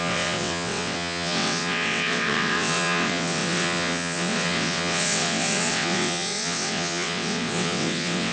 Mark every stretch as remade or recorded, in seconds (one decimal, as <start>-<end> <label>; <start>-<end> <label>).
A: 0.0-8.3 remade